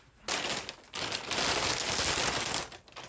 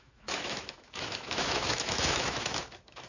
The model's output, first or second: second